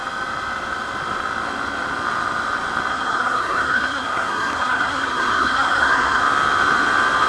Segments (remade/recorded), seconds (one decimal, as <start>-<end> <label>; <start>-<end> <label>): 0.0-2.9 recorded; 2.9-6.2 remade; 6.2-7.3 recorded